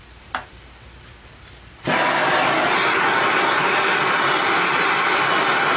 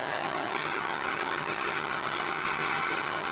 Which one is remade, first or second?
second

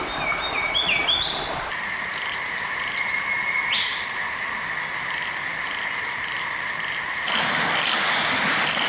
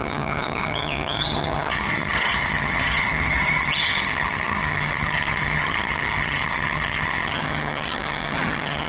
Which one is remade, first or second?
second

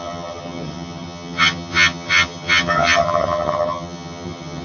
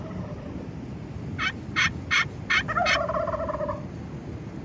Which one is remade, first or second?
first